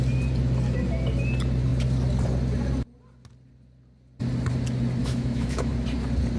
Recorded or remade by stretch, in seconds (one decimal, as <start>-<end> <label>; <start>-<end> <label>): 0.0-5.0 recorded; 5.0-5.7 remade; 5.7-6.4 recorded